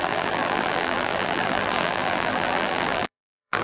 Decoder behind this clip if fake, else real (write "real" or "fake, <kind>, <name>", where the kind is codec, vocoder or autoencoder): fake, vocoder, BigVGAN v2